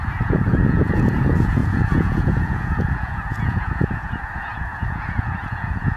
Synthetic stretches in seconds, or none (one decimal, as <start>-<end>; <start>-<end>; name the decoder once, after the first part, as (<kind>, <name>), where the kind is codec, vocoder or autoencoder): 0.0-6.0 (vocoder, Vocos)